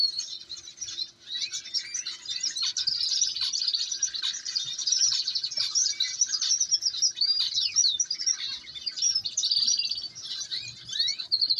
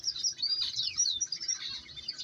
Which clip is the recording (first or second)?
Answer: first